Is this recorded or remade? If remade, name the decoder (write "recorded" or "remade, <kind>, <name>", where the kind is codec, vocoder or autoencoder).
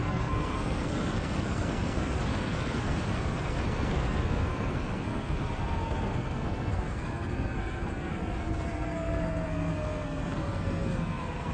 remade, codec, SNAC